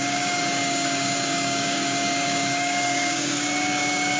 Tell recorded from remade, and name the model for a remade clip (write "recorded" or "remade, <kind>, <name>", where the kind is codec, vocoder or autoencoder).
remade, codec, DAC